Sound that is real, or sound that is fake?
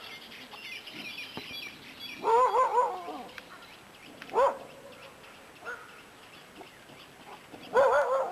real